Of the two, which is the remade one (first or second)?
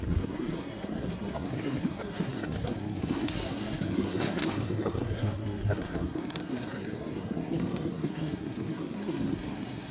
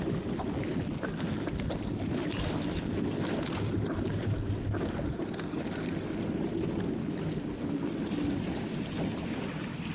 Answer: first